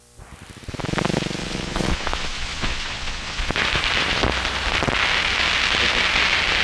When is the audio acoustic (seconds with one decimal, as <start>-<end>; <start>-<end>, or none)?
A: 0.0-1.4; 3.5-6.6